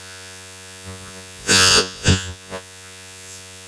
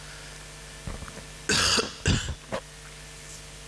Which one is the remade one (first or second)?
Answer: first